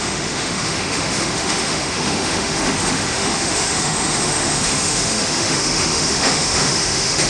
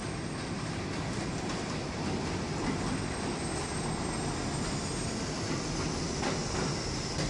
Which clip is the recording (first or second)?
second